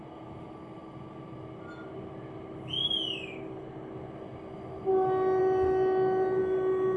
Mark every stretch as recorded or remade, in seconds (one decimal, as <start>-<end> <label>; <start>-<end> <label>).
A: 0.0-7.0 recorded